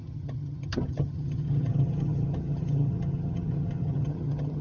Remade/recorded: remade